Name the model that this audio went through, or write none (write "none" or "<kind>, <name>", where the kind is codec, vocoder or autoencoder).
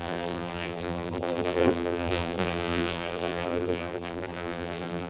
vocoder, BigVGAN v2